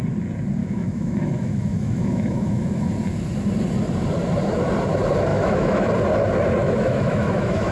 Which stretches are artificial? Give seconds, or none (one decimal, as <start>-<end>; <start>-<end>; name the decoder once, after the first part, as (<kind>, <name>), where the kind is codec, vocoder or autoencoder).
0.6-2.9 (autoencoder, DAC-VAE); 5.3-5.9; 6.6-7.7